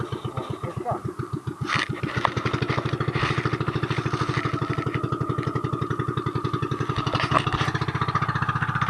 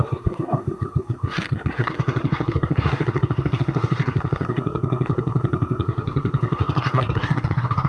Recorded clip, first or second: first